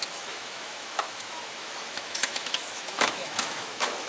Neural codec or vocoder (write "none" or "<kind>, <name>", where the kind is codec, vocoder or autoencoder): autoencoder, DAC-VAE